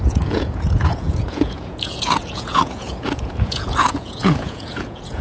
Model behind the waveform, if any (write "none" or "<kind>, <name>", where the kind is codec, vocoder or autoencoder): vocoder, Vocos